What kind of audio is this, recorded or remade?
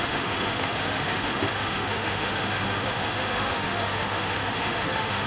remade